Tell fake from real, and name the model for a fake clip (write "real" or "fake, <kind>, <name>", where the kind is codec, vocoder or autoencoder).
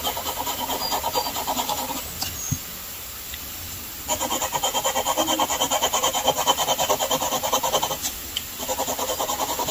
real